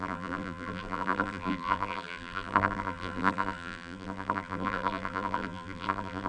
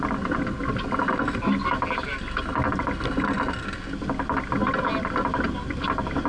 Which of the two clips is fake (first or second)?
first